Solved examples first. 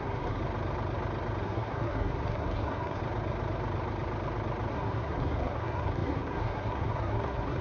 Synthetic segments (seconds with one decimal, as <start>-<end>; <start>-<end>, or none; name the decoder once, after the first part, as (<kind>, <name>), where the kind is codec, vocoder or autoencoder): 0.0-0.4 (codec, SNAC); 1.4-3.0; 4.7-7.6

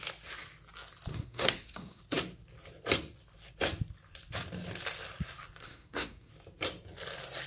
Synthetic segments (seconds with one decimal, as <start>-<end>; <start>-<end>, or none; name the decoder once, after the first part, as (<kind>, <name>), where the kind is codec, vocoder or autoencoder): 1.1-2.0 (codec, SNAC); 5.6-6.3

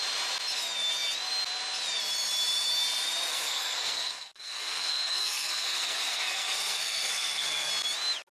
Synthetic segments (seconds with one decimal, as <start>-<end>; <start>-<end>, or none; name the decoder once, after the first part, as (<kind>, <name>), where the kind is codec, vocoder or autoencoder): 3.3-7.7 (codec, SNAC)

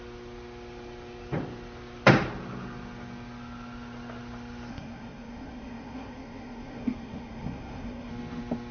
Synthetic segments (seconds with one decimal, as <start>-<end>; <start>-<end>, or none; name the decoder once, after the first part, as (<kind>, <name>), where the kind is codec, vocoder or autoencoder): 4.7-8.1 (codec, SNAC)